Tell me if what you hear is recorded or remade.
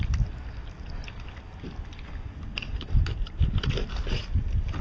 recorded